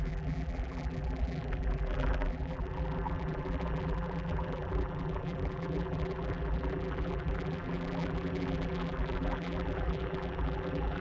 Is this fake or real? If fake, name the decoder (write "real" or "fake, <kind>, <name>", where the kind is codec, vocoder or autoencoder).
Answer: fake, vocoder, BigVGAN v2